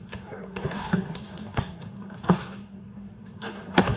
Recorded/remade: remade